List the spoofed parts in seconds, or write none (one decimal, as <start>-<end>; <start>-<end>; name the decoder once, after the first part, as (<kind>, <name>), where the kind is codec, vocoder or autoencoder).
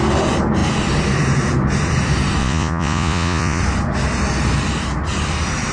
2.4-3.6 (vocoder, Vocos)